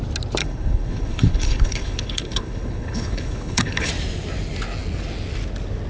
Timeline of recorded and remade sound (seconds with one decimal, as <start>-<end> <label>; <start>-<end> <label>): 0.0-0.4 recorded; 0.4-3.9 remade; 3.9-5.9 recorded